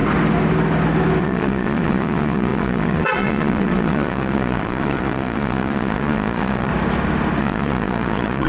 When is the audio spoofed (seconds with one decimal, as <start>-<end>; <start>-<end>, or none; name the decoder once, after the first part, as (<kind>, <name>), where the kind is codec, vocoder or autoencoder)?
1.2-6.7 (vocoder, Vocos); 7.4-8.5

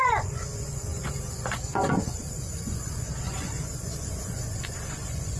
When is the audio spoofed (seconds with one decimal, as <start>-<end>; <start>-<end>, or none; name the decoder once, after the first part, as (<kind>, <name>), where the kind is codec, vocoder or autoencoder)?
0.0-5.4 (vocoder, Vocos)

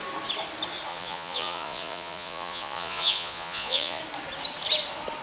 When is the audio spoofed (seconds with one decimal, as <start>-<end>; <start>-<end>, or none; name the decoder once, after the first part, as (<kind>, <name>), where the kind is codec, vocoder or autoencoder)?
0.9-4.0 (vocoder, Vocos)

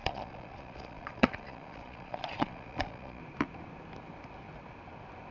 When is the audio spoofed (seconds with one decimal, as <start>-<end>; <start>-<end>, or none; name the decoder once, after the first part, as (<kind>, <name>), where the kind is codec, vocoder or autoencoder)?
0.0-3.2 (vocoder, Vocos)

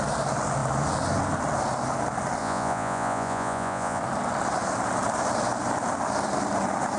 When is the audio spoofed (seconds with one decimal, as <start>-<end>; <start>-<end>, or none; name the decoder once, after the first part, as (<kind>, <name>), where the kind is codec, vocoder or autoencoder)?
2.4-4.0 (vocoder, Vocos)